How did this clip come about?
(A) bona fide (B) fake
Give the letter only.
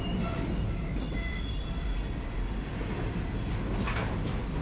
A